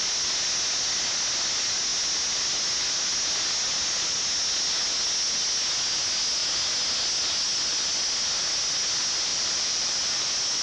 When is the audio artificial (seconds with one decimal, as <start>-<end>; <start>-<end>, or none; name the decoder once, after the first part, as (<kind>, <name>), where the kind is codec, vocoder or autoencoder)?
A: 9.3-9.9 (vocoder, BigVGAN v2)